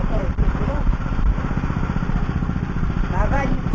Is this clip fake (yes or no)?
yes